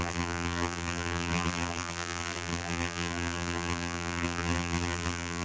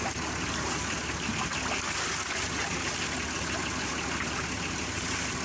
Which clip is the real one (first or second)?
second